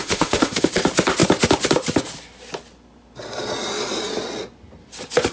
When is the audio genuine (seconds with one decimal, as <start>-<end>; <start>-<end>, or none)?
0.7-5.3